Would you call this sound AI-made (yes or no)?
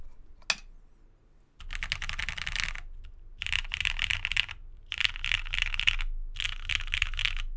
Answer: no